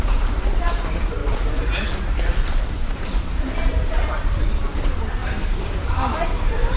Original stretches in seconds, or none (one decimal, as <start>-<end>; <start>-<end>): none